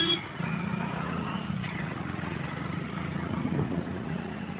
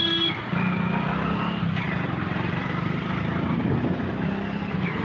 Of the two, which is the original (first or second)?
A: second